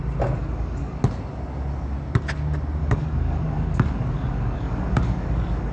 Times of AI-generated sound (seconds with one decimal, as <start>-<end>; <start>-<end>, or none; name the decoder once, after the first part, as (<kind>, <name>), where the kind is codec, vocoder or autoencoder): 0.4-1.0 (codec, DAC); 2.8-5.7